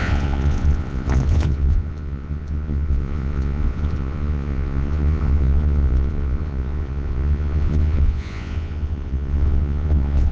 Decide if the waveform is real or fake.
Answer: fake